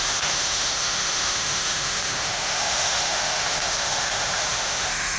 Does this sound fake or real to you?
fake